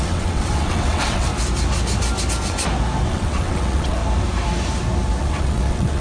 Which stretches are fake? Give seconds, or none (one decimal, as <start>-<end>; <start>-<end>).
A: 0.0-1.3; 3.1-4.0; 5.2-6.0